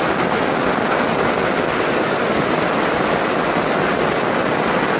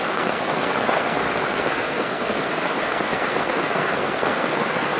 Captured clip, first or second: first